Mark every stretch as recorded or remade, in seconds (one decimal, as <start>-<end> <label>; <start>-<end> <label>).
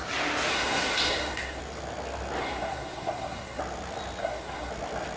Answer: 0.0-0.5 recorded; 0.5-1.6 remade; 1.6-2.4 recorded; 2.4-3.6 remade; 3.6-4.2 recorded; 4.2-4.7 remade; 4.7-5.2 recorded